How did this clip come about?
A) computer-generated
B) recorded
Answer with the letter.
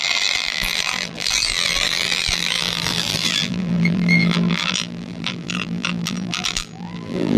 A